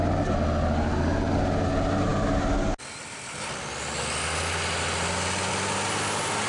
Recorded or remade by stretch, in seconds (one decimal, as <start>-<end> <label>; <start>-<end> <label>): 0.0-6.5 recorded